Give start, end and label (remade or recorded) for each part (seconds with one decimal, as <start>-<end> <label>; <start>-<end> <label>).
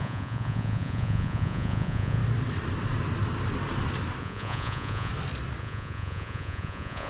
0.0-2.2 remade; 2.2-4.2 recorded; 4.2-5.1 remade; 5.1-5.6 recorded; 5.6-7.1 remade